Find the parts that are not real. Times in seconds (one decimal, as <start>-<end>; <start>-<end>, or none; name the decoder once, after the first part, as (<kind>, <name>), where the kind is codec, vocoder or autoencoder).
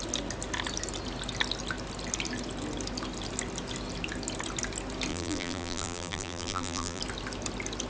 5.1-7.0 (vocoder, BigVGAN v2)